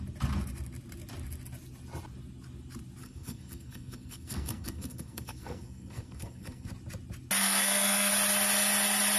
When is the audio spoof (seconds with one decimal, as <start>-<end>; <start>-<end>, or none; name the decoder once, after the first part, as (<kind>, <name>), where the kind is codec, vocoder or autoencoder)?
3.0-6.7 (codec, SNAC); 7.4-8.1